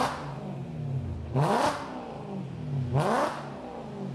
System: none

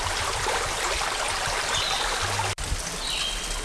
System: none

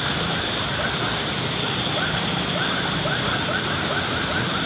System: none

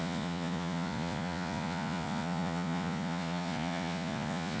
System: vocoder, Vocos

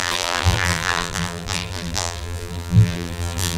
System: vocoder, BigVGAN v2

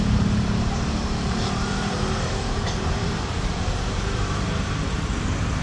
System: vocoder, BigVGAN v2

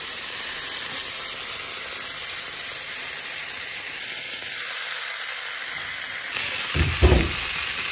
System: none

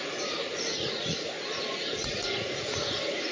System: vocoder, Vocos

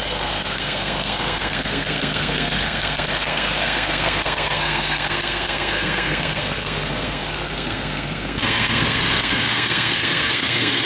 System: codec, SNAC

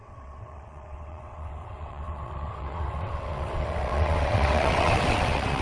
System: vocoder, WaveNeXt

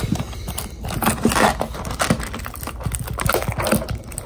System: none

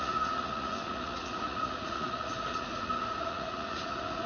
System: vocoder, Vocos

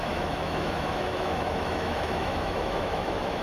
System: autoencoder, DAC-VAE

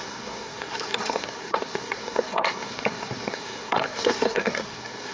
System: codec, SNAC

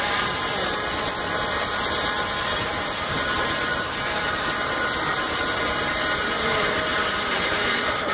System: vocoder, BigVGAN v2